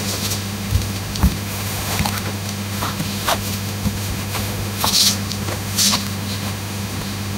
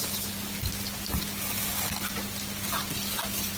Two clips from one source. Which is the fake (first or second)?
first